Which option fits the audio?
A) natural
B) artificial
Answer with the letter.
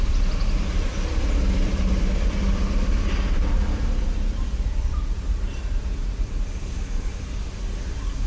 B